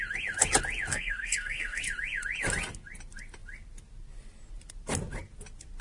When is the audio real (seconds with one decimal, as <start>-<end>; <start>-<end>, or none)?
0.0-0.9; 1.8-5.8